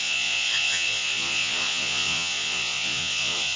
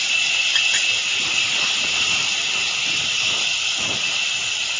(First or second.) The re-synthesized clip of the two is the first